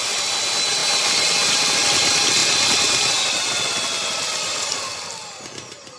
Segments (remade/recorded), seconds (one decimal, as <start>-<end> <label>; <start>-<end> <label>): 0.0-6.0 recorded